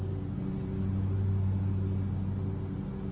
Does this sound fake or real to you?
real